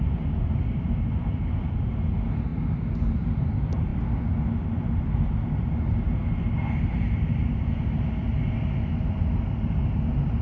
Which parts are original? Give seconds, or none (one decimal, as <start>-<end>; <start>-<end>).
0.0-10.4